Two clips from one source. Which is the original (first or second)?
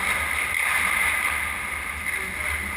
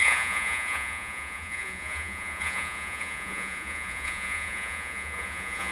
first